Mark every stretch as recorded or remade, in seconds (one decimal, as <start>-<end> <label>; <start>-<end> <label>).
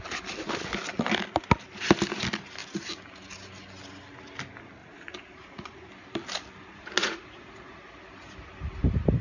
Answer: 0.0-4.8 recorded; 4.8-5.9 remade; 5.9-6.7 recorded; 6.7-7.8 remade; 7.8-9.2 recorded